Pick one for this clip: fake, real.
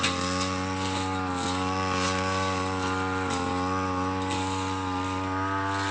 real